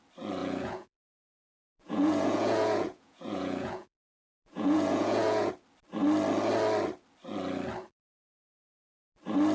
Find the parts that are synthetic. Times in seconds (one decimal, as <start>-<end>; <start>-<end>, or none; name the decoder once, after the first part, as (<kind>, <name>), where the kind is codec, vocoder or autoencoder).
0.4-5.5 (vocoder, Vocos)